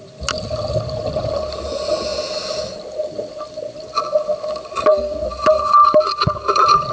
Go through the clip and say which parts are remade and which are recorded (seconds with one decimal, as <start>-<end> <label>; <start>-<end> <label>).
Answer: 0.0-6.9 recorded